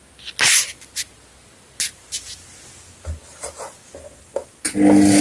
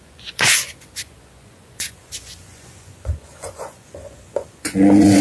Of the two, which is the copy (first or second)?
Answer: second